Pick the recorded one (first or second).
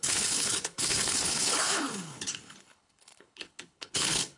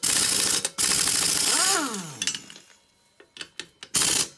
second